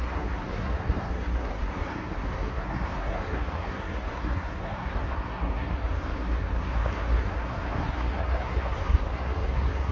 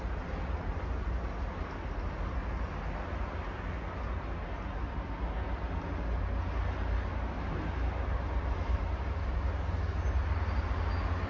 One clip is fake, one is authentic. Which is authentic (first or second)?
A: second